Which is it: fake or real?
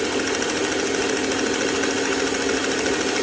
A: real